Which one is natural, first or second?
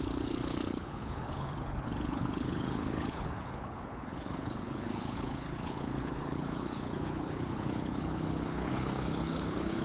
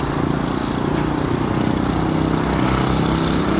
second